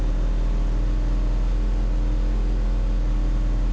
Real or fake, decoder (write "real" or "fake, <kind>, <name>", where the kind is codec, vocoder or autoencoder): real